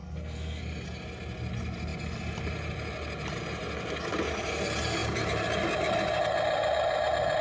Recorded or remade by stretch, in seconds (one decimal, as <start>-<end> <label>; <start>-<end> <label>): 0.0-0.6 remade; 0.6-7.4 recorded